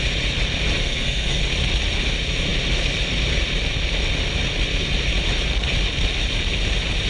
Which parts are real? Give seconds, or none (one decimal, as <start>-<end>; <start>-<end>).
0.0-0.8; 1.4-7.1